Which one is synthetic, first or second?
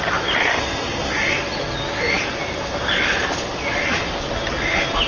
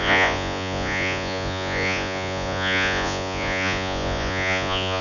second